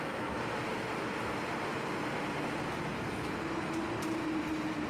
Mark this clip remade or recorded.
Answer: recorded